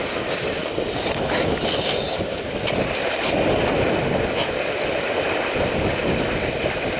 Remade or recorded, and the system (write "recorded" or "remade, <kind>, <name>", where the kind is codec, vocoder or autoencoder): recorded